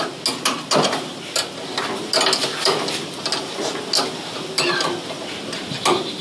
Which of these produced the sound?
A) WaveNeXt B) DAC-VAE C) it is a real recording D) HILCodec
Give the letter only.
C